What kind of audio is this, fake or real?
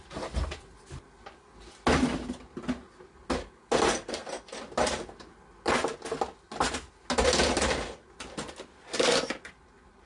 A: real